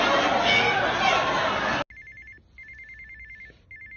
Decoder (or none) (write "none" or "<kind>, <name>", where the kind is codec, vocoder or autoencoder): none